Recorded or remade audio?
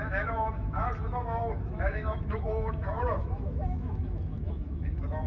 remade